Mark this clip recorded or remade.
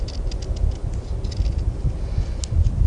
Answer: recorded